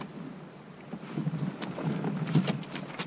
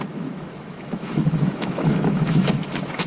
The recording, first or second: first